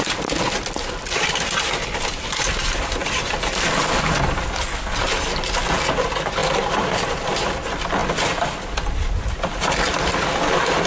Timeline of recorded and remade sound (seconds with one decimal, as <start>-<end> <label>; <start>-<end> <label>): 0.0-3.0 recorded; 3.0-4.3 remade; 4.3-6.4 recorded; 6.4-7.6 remade; 7.6-8.0 recorded; 8.0-9.0 remade; 9.0-10.9 recorded